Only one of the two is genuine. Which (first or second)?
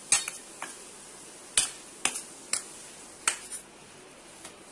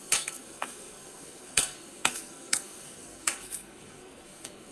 first